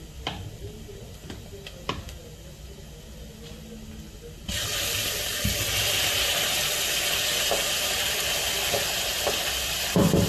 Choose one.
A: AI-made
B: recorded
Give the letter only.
B